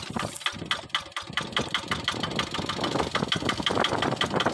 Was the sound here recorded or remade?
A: recorded